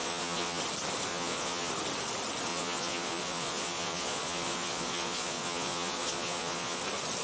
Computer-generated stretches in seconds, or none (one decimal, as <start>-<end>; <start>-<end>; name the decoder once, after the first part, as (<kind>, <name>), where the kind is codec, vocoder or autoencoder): 0.0-0.6 (vocoder, Vocos); 1.1-1.7; 2.5-6.8